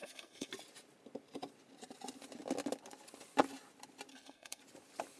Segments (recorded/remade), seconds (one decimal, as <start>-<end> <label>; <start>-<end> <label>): 0.0-0.5 remade; 0.5-4.1 recorded; 4.1-4.6 remade; 4.6-5.2 recorded